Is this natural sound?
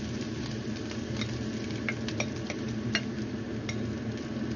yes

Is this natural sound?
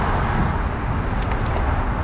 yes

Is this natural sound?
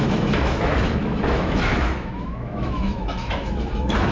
no